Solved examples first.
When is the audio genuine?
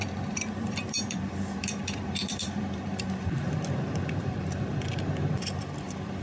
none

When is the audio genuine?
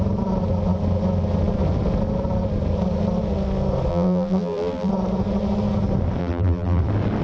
0.0-3.9; 4.9-6.2; 6.8-7.2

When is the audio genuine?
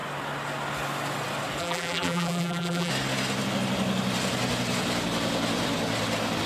0.0-1.6; 2.9-6.5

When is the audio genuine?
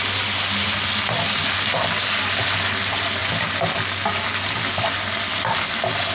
0.0-6.1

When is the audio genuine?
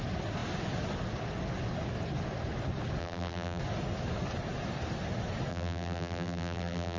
0.0-3.0; 3.6-5.5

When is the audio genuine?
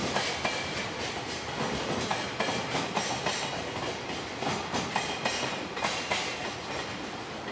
0.0-2.1; 3.3-7.5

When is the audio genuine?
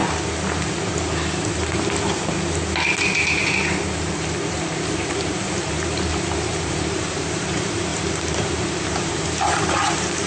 0.0-4.5; 7.9-8.5